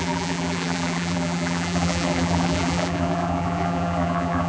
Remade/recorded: remade